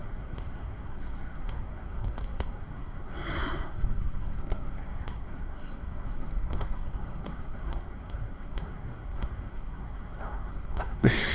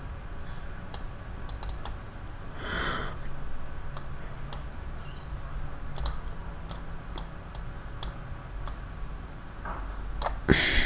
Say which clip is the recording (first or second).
second